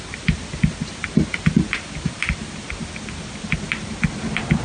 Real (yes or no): yes